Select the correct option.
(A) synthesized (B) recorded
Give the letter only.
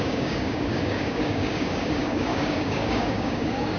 A